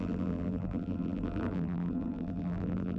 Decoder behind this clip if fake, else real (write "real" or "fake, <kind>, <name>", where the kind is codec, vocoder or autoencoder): fake, vocoder, BigVGAN v2